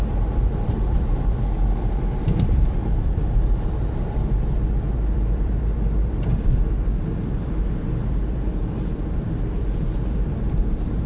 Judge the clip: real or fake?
fake